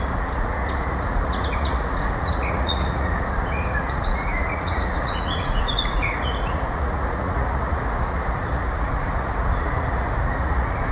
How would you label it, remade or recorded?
remade